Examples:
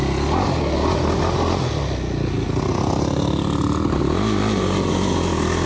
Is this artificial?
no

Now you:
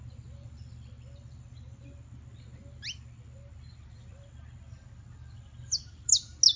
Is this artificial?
no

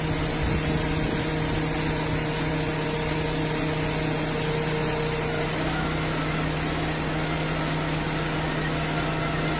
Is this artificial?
no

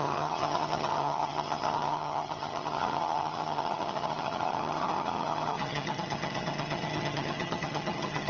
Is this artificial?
yes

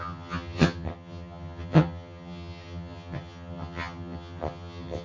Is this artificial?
yes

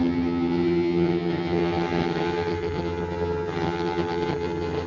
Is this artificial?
yes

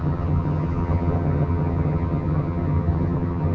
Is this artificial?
yes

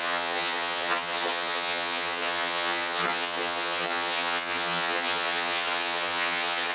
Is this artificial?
yes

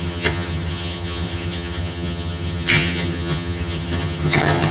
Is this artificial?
yes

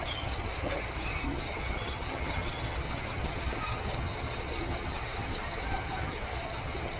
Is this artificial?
yes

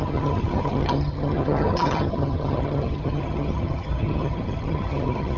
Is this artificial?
yes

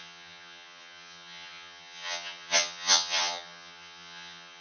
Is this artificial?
yes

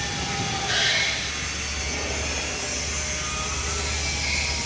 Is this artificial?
no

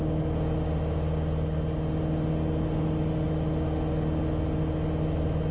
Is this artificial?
no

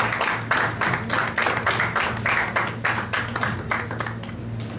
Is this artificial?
no